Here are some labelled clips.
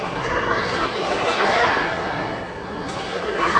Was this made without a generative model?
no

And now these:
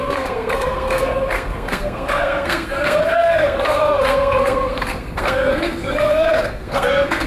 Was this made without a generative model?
no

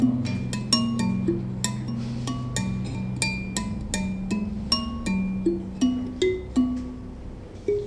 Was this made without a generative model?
yes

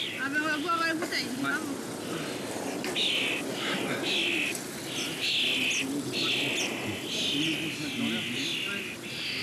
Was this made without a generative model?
yes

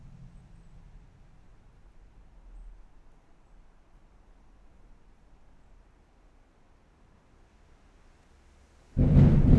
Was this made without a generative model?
yes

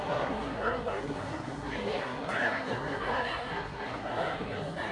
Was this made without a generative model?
no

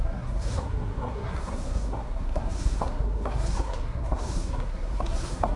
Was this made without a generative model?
no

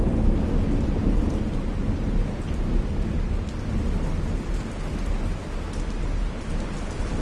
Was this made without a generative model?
yes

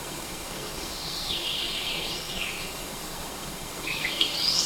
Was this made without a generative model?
no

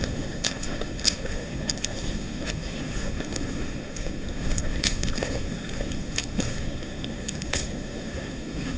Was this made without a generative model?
no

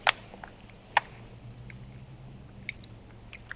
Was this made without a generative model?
yes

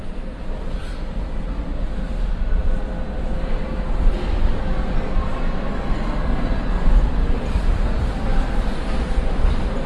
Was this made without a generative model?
yes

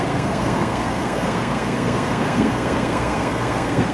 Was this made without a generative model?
no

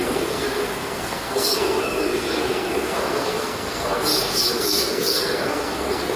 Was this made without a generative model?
no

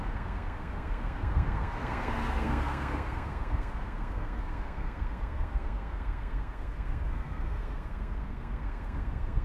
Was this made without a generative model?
no